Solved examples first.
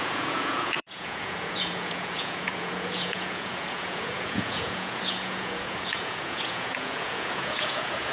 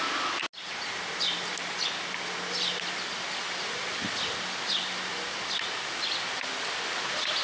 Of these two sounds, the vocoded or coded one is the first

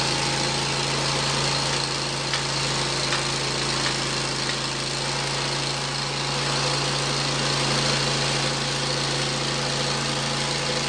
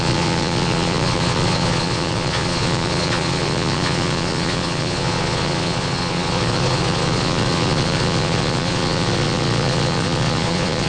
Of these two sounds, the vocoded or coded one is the second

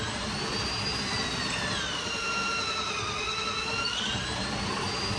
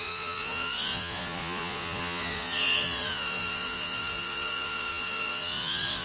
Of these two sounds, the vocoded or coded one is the second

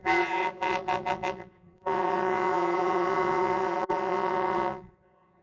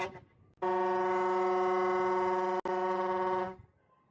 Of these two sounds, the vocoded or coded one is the first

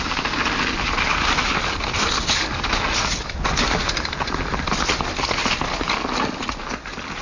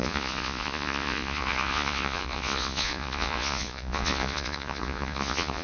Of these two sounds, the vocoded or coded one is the second